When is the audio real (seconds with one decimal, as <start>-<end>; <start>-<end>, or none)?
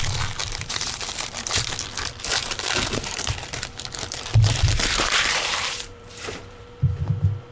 0.0-0.4; 1.3-2.4; 6.9-7.5